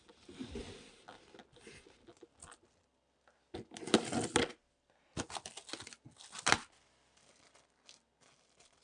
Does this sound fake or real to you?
real